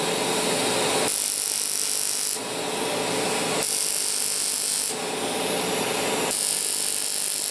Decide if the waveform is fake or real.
real